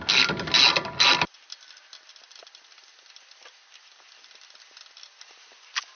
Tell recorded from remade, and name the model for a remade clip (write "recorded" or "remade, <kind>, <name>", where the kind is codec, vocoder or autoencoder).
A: recorded